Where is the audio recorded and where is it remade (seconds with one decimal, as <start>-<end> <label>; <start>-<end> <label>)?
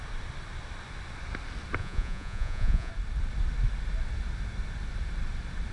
0.0-1.8 recorded; 1.8-2.9 remade; 2.9-5.7 recorded